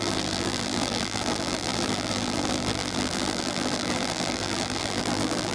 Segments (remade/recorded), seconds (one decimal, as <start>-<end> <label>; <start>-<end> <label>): 0.0-5.5 remade